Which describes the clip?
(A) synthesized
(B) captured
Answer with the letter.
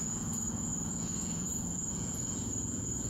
A